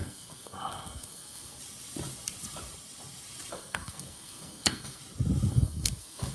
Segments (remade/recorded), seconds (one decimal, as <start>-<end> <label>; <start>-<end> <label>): 0.0-1.6 remade; 1.6-3.5 recorded; 3.5-5.0 remade; 5.0-5.5 recorded; 5.5-6.3 remade